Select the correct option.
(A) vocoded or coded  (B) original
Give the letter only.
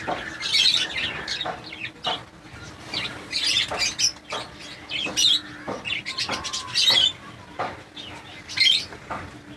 B